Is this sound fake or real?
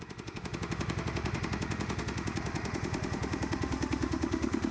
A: fake